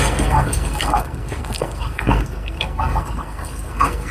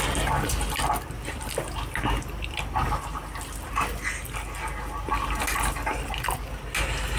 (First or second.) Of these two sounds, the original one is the second